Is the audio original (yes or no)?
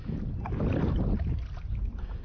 yes